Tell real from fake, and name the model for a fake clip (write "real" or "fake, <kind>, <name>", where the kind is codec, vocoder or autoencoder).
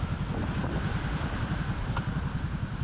real